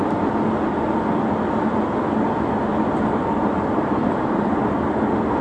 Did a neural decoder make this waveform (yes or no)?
no